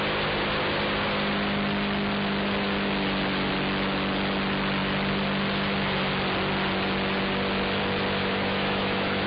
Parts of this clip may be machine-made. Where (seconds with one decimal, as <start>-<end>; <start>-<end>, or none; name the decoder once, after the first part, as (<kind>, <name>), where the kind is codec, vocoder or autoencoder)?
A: 8.2-9.3 (autoencoder, DAC-VAE)